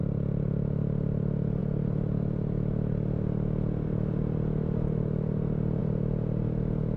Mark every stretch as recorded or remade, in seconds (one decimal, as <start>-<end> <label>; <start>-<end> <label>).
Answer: 0.0-7.0 recorded